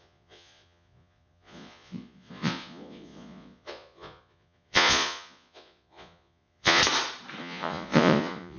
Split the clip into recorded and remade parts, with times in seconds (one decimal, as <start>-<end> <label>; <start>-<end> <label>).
0.0-6.8 remade; 6.8-7.4 recorded; 7.4-8.6 remade